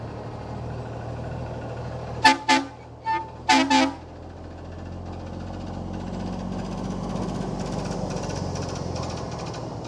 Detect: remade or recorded recorded